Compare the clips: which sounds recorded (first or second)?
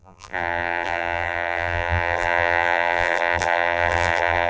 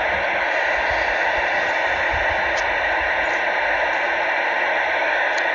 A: second